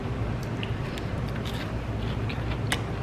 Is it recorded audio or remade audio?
recorded